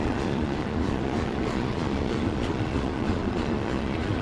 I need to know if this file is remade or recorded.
remade